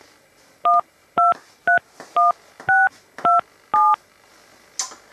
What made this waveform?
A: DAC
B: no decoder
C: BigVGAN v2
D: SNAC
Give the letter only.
B